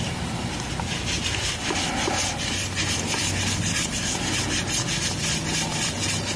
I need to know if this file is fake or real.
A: real